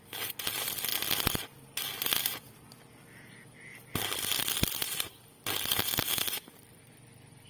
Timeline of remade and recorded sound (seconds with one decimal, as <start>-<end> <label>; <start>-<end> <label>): 0.0-6.1 recorded; 6.1-6.9 remade; 6.9-7.5 recorded